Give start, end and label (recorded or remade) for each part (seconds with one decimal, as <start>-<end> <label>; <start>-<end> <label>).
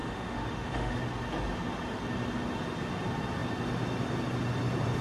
0.0-1.0 remade; 1.0-5.0 recorded